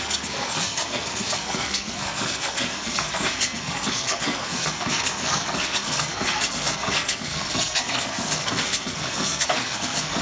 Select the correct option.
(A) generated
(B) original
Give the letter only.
A